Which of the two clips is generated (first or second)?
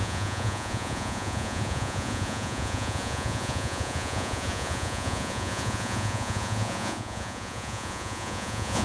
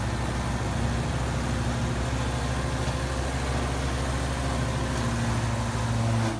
first